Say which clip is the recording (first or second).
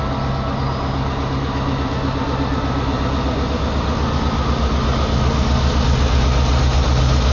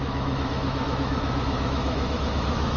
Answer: first